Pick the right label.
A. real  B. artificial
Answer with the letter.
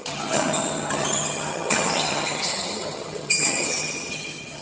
B